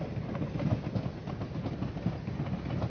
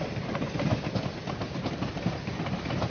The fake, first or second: second